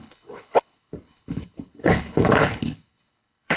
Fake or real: fake